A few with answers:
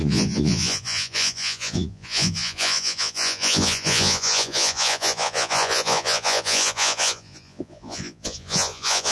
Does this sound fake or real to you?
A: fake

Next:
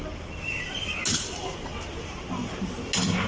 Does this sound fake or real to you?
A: real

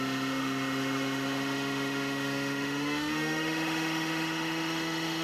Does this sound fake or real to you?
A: fake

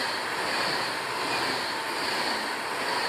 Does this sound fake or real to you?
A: real